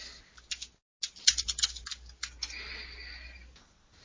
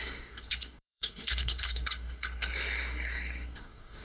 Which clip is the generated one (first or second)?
second